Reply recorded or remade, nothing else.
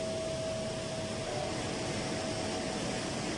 recorded